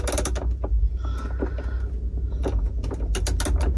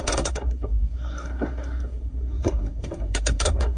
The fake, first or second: second